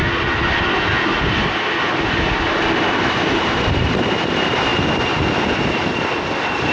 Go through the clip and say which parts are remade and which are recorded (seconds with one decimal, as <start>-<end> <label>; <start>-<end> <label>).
0.0-3.0 recorded; 3.0-4.7 remade; 4.7-5.4 recorded; 5.4-6.7 remade